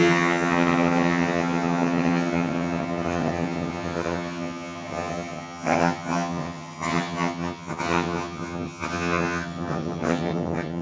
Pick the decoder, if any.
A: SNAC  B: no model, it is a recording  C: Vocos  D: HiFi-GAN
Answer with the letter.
D